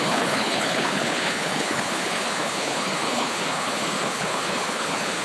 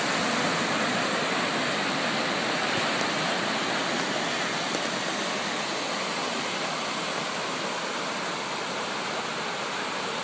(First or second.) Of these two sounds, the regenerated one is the first